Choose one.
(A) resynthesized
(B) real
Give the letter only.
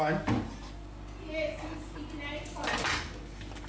B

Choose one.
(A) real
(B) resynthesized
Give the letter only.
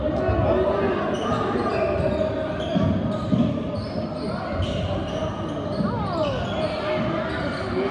A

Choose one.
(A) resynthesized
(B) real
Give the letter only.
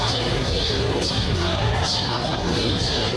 A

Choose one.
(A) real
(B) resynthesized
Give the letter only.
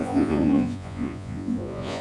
B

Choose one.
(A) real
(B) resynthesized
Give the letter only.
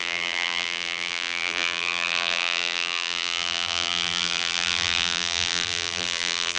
B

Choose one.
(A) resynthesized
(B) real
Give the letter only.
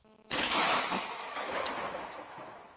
A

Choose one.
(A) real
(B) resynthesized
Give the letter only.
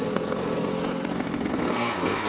B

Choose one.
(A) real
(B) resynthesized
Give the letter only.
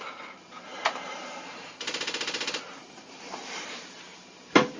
B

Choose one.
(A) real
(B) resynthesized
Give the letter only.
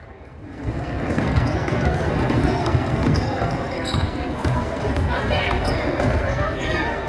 B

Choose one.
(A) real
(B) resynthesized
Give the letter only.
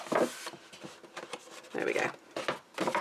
A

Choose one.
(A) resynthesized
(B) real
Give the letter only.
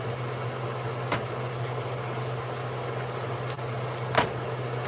B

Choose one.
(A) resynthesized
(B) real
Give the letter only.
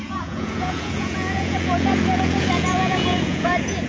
A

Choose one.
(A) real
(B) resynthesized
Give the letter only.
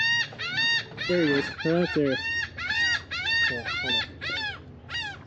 A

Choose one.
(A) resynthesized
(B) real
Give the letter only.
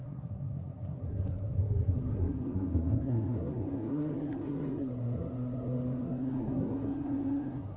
A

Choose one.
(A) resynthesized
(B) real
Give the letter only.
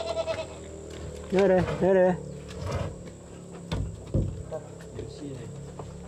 B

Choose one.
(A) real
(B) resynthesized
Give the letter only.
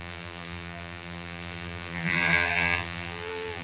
B